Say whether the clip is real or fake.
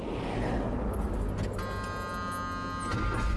real